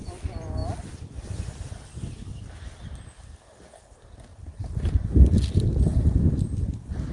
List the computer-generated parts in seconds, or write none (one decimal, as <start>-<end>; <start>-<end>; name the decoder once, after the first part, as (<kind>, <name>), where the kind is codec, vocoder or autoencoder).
none